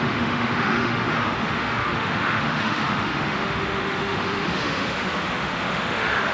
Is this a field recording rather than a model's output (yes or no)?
no